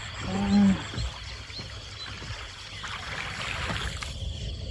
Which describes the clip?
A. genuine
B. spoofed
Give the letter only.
A